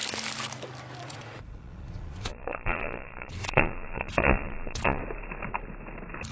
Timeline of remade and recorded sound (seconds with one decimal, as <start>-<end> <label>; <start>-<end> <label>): 0.0-1.0 recorded; 1.0-5.0 remade; 5.0-6.3 recorded